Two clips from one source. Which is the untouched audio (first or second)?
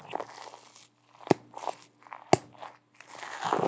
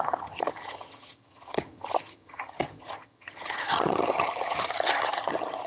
first